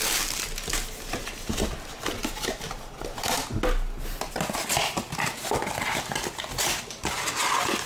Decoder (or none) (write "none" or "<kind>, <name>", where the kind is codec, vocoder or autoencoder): none